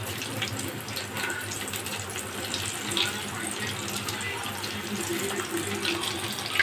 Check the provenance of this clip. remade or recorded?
recorded